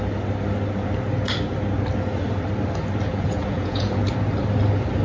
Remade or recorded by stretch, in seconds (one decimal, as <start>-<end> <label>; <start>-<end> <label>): 0.0-3.1 recorded; 3.1-4.1 remade; 4.1-5.0 recorded